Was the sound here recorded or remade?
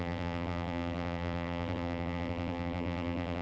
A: remade